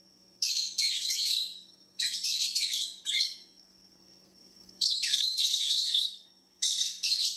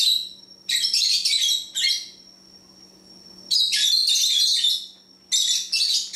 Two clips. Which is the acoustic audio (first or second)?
second